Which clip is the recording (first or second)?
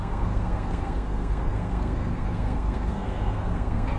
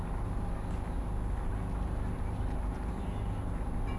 second